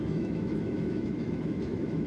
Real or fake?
fake